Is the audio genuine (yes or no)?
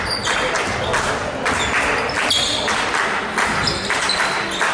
yes